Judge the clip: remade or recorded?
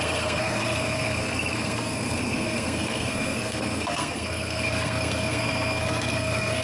remade